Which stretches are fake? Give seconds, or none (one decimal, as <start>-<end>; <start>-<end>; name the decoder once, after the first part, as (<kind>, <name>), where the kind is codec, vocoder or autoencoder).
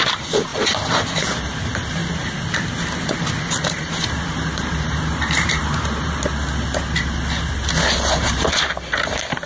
0.0-0.5 (vocoder, BigVGAN v2); 1.4-2.0; 3.8-6.2; 8.2-9.5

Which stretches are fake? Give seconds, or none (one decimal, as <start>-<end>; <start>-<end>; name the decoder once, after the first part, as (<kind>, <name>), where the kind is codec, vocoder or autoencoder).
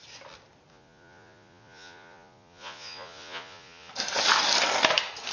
0.7-3.9 (vocoder, Vocos)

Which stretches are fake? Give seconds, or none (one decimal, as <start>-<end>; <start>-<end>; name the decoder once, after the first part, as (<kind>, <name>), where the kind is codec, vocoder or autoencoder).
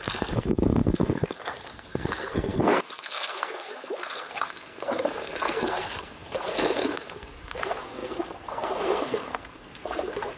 0.0-10.4 (codec, SNAC)